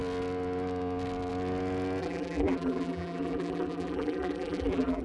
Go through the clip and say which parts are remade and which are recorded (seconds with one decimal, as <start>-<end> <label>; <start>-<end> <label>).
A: 0.0-2.0 recorded; 2.0-5.0 remade